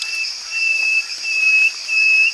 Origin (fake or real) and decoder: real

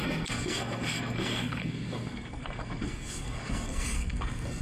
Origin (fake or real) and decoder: fake, codec, SNAC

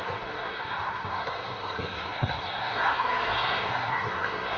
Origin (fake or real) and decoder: fake, codec, SNAC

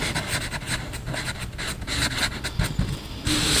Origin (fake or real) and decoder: real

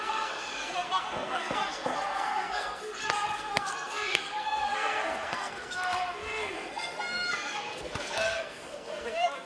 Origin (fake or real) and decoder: fake, codec, SNAC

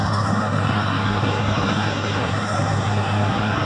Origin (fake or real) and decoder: fake, codec, SNAC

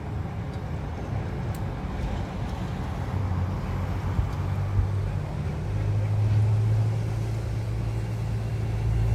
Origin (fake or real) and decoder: real